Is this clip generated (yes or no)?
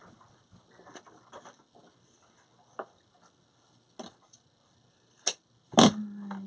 no